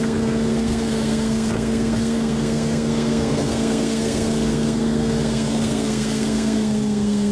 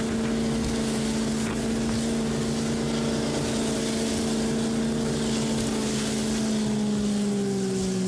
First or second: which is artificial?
first